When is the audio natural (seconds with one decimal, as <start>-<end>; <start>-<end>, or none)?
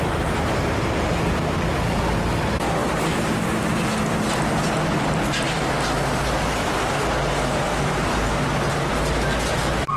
0.0-10.0